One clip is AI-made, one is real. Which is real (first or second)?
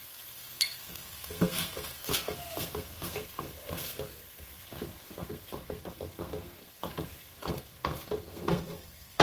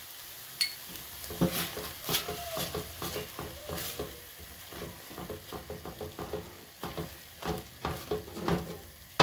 second